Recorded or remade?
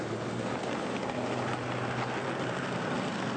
recorded